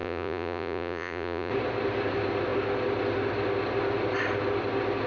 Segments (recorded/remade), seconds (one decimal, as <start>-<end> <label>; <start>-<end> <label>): 0.0-1.5 remade; 1.5-5.1 recorded